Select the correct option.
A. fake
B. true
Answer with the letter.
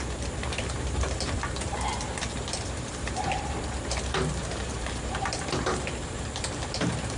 A